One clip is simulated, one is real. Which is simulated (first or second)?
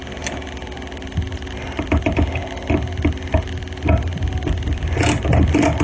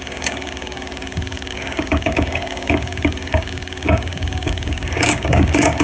second